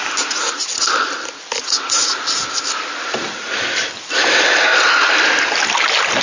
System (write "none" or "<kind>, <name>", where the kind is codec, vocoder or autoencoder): none